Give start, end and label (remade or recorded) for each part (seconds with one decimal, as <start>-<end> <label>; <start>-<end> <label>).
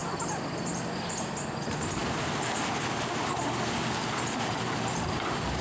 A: 0.0-5.6 recorded